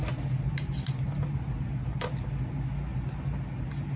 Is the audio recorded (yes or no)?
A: yes